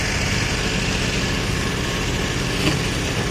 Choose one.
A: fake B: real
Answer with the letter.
B